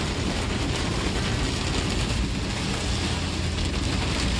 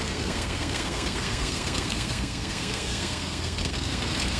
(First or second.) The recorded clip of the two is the first